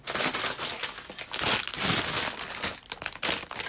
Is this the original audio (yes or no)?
yes